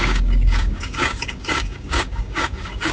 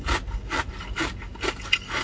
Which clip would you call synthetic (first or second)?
first